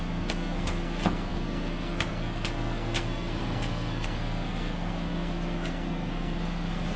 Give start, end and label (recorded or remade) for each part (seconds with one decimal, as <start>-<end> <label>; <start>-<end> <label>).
0.0-7.0 remade